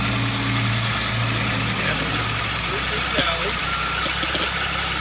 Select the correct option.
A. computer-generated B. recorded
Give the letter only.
B